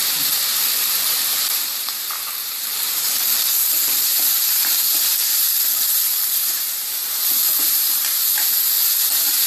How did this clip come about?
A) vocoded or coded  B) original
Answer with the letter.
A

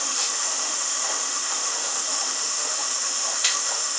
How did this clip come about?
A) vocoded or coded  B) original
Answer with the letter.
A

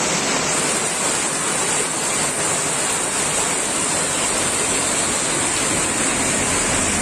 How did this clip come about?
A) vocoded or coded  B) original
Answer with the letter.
B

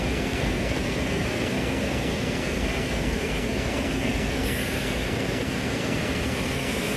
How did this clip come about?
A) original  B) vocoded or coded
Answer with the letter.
B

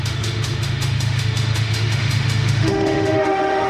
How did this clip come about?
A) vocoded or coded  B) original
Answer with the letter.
A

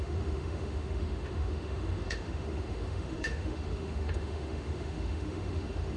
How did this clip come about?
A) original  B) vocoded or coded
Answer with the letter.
B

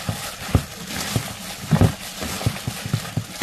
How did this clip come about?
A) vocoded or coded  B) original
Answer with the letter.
B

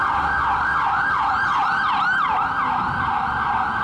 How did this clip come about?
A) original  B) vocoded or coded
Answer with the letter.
A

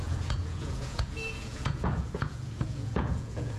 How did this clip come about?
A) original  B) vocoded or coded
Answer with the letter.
B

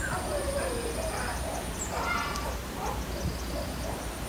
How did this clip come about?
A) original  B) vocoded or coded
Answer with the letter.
A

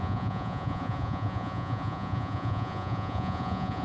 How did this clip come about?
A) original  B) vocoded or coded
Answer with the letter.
B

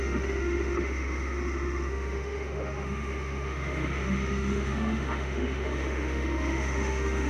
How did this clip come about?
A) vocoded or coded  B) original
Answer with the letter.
A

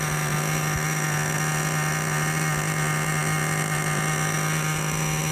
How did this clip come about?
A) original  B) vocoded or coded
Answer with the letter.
A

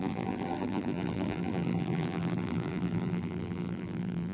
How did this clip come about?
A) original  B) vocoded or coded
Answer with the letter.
B